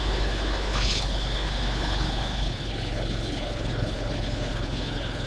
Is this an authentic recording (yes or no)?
no